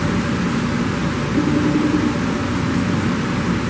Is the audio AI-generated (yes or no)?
no